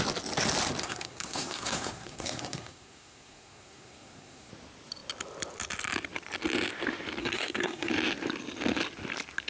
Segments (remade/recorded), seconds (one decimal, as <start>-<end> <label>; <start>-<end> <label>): 0.0-0.8 recorded; 0.8-4.5 remade; 4.5-7.2 recorded; 7.2-7.9 remade; 7.9-9.5 recorded